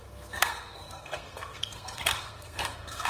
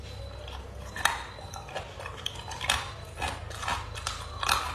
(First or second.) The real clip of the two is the second